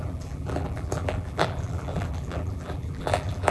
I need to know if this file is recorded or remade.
remade